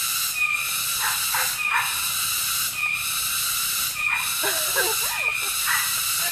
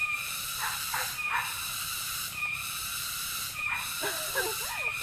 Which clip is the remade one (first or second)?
second